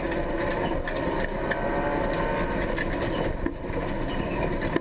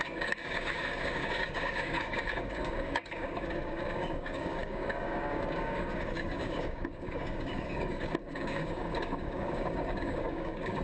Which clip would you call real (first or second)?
first